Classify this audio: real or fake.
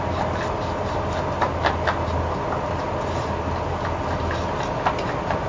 real